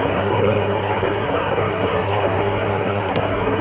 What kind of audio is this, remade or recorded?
remade